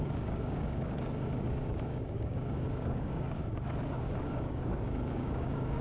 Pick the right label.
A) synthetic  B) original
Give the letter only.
A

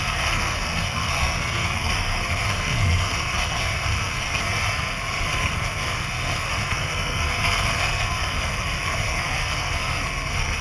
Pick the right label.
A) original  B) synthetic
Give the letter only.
B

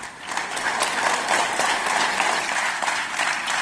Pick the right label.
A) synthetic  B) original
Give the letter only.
B